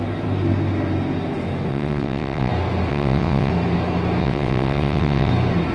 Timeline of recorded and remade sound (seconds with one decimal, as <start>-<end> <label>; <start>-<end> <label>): 0.0-1.7 recorded; 1.7-2.5 remade; 2.5-2.9 recorded; 2.9-3.5 remade; 3.5-4.2 recorded; 4.2-5.3 remade; 5.3-5.7 recorded